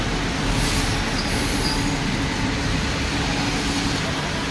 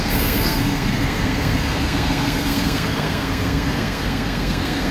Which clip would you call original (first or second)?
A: first